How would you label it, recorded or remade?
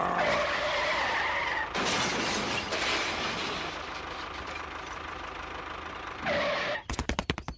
remade